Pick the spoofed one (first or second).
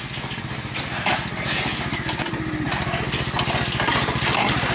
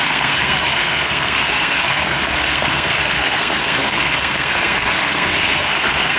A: second